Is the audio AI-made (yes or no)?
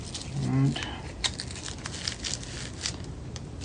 no